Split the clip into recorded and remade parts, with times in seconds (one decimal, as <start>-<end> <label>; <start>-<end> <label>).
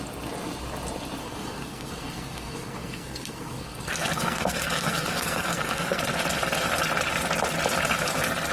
0.0-1.2 recorded; 1.2-6.0 remade; 6.0-8.5 recorded